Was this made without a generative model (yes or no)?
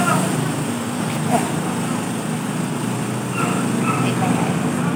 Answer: yes